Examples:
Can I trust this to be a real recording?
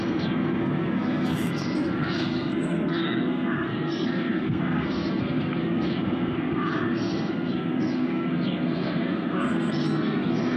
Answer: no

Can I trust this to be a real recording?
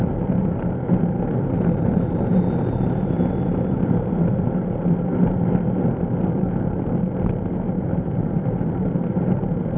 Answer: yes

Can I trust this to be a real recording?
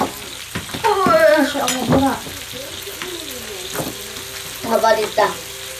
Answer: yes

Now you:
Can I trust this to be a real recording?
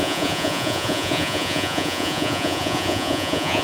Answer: no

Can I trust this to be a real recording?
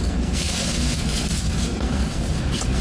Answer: no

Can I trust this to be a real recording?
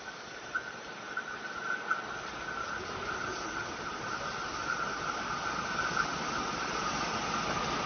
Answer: yes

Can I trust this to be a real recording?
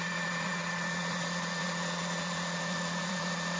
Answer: no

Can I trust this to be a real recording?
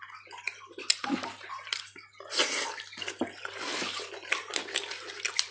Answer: yes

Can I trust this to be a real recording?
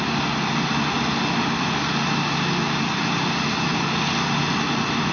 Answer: yes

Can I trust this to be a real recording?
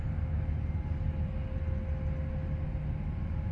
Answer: yes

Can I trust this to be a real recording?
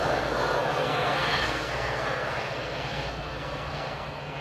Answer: no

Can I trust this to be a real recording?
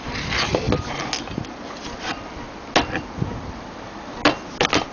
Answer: yes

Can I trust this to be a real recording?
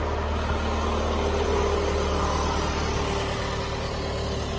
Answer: yes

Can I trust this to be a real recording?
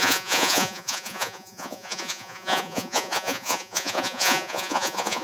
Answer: no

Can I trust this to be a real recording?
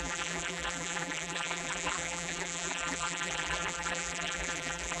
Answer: no